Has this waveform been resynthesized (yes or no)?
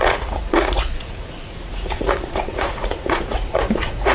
yes